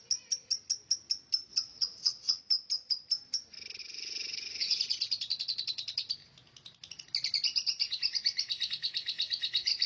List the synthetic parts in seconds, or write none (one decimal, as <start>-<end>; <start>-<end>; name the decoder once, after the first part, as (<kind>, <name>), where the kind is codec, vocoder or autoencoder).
1.5-2.4 (vocoder, WaveNeXt); 3.8-4.8